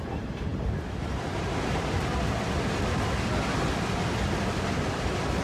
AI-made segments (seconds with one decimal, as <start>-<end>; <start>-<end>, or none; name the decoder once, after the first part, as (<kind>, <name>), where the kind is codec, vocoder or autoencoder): none